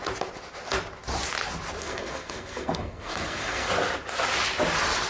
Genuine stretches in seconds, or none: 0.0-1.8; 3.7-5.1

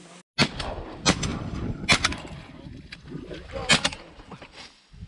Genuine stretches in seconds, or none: 0.0-5.1

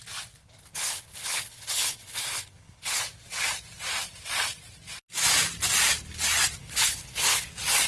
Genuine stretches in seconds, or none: 0.0-0.4; 3.0-6.6; 7.5-7.9

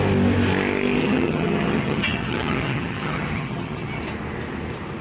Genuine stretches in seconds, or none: 0.0-1.0; 4.0-5.0